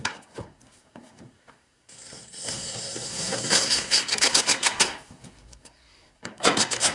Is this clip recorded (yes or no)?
no